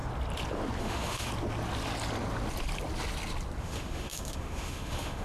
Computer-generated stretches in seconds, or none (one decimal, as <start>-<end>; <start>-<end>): 0.8-1.3; 3.6-5.2